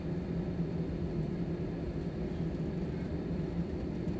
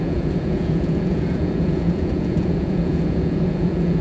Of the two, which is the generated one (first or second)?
second